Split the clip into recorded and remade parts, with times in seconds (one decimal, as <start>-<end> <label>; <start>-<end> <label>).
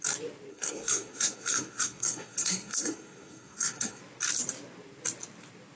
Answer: 0.0-0.5 recorded; 0.5-4.0 remade; 4.0-5.8 recorded